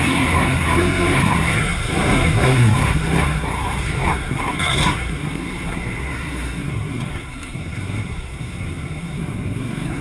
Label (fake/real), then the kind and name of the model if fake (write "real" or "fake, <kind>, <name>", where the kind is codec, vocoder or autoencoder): fake, codec, SNAC